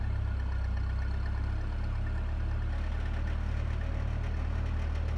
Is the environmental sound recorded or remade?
recorded